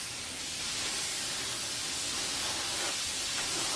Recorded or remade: recorded